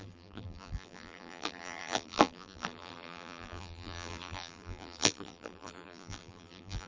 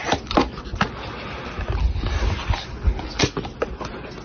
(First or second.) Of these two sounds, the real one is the second